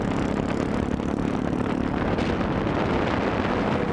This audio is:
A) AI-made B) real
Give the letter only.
B